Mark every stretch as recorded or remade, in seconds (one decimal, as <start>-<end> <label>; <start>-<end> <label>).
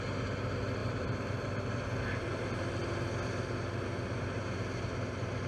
0.0-0.8 recorded; 0.8-1.6 remade; 1.6-5.5 recorded